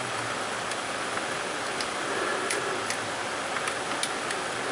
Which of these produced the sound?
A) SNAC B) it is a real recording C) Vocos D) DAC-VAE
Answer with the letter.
B